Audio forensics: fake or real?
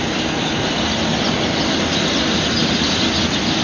real